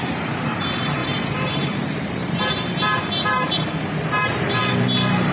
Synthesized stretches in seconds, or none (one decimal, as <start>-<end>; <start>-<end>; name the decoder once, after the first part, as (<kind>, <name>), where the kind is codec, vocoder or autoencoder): 0.0-4.6 (vocoder, BigVGAN v2)